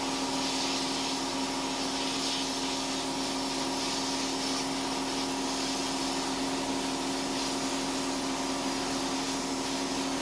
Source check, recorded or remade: recorded